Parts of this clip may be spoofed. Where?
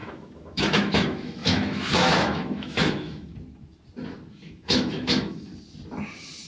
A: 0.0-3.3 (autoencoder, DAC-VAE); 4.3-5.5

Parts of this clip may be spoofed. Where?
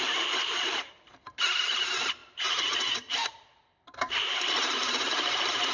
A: 0.0-5.7 (vocoder, BigVGAN v2)